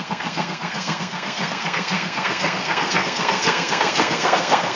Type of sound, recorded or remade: remade